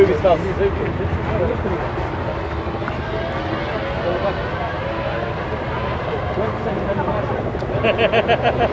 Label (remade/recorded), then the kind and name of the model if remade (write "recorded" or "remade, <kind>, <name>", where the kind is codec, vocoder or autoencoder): recorded